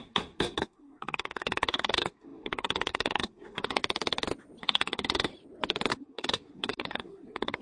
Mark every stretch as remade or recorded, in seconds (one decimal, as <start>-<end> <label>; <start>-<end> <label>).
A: 0.0-3.8 remade; 3.8-4.6 recorded; 4.6-5.3 remade; 5.3-5.9 recorded; 5.9-7.6 remade